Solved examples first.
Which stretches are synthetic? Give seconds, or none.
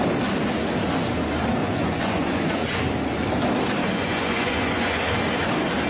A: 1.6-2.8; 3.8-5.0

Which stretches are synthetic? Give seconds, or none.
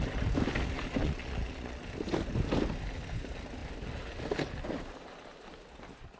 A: 1.0-1.8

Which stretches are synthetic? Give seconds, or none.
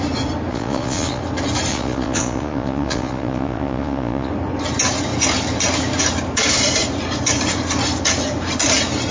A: 0.5-1.2; 1.7-4.3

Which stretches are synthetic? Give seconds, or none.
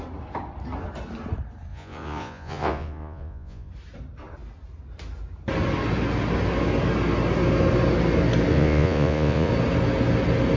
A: 1.7-3.7; 8.5-9.5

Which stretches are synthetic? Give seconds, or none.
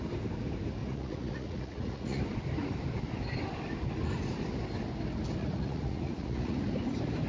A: 0.8-2.2; 5.4-6.6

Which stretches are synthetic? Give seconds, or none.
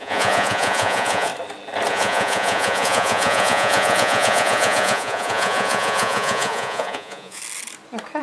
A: 0.0-1.3; 1.9-7.4